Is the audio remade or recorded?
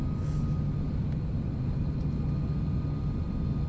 recorded